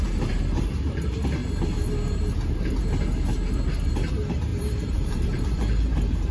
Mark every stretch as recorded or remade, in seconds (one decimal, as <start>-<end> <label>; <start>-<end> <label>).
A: 0.0-1.4 remade; 1.4-4.1 recorded; 4.1-6.3 remade